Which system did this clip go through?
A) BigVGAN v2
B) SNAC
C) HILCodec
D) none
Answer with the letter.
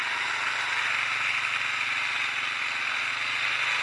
D